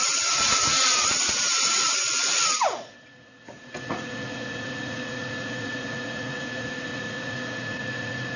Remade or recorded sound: remade